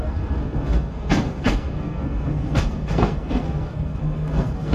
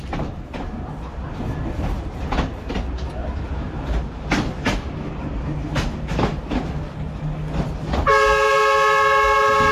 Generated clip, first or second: first